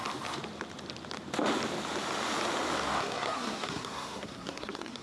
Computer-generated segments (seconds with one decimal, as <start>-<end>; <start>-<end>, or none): 3.0-5.0